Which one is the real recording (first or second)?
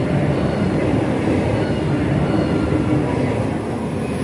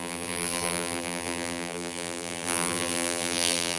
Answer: first